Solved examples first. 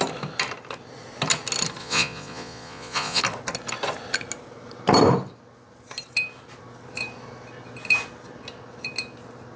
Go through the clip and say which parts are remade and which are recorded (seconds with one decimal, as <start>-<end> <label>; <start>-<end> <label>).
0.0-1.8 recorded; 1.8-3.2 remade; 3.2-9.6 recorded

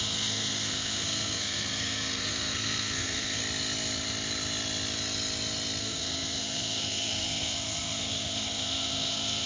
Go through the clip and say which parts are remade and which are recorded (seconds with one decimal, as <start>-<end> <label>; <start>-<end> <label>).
0.0-3.4 remade; 3.4-5.8 recorded; 5.8-9.5 remade

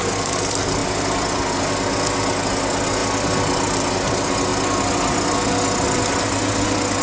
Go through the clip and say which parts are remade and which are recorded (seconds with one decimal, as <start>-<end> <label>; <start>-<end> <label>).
0.0-7.0 recorded

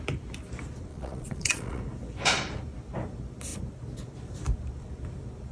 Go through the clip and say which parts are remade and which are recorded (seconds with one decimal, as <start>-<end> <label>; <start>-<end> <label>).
0.0-0.9 recorded; 0.9-1.8 remade; 1.8-5.5 recorded

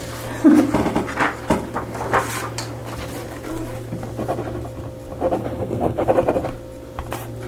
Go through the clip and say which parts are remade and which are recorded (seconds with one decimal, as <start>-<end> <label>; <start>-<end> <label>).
0.0-5.4 recorded; 5.4-6.1 remade; 6.1-7.5 recorded

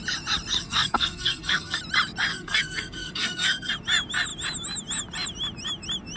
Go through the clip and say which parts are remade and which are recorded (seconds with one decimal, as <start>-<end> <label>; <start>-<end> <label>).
0.0-0.6 recorded; 0.6-1.8 remade; 1.8-2.3 recorded; 2.3-3.7 remade; 3.7-6.2 recorded